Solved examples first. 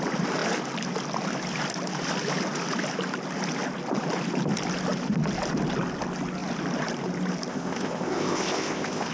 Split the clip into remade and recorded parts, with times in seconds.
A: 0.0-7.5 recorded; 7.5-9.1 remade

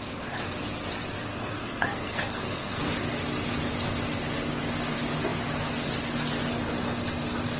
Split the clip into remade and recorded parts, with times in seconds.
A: 0.0-1.3 recorded; 1.3-2.8 remade; 2.8-7.6 recorded

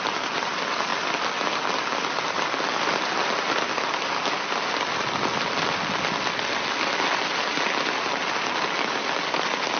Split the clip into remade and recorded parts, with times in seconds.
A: 0.0-9.8 recorded

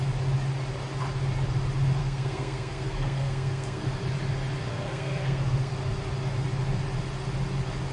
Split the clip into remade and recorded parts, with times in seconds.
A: 0.0-2.0 recorded; 2.0-4.0 remade; 4.0-4.6 recorded; 4.6-5.7 remade; 5.7-7.9 recorded

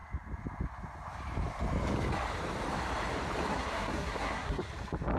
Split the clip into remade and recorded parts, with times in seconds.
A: 0.0-3.5 recorded; 3.5-4.7 remade; 4.7-5.2 recorded

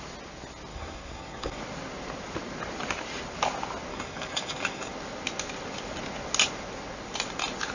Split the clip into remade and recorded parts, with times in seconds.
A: 0.0-0.7 recorded; 0.7-1.6 remade; 1.6-3.9 recorded; 3.9-4.9 remade; 4.9-7.7 recorded